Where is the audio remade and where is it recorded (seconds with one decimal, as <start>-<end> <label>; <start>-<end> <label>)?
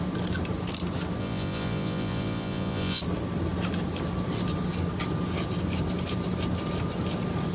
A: 0.0-1.2 recorded; 1.2-3.0 remade; 3.0-7.5 recorded